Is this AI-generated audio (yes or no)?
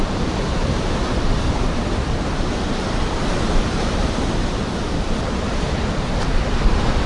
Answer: yes